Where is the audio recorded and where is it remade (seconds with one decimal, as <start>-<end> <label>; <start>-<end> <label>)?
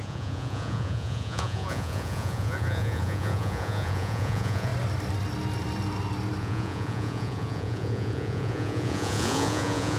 0.0-4.7 remade; 4.7-6.4 recorded; 6.4-10.0 remade